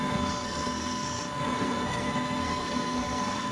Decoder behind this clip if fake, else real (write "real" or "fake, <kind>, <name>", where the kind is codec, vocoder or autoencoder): fake, codec, SNAC